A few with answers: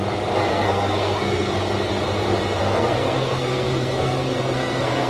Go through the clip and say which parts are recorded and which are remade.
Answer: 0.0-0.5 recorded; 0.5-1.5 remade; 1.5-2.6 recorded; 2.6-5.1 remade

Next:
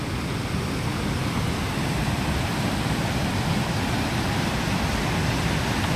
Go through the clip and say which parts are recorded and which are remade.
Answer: 0.0-6.0 recorded

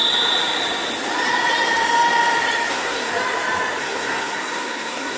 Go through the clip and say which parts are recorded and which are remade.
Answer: 0.0-2.7 recorded; 2.7-3.1 remade; 3.1-3.8 recorded; 3.8-5.2 remade